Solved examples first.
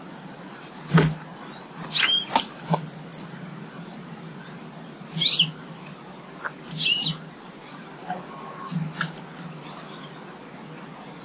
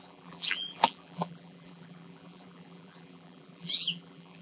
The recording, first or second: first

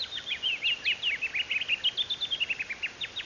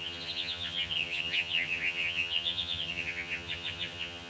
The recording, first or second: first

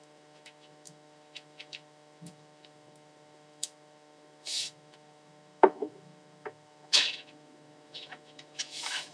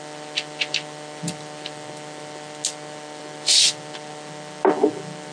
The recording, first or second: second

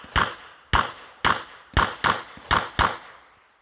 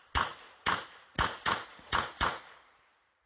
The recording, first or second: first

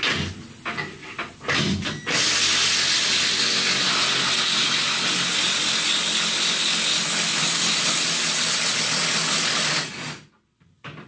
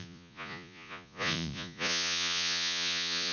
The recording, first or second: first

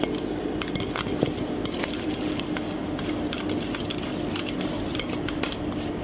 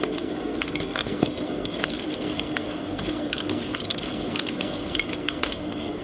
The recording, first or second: first